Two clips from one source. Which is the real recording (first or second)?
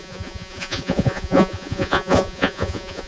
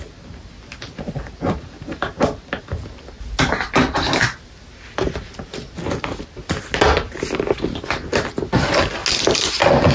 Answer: second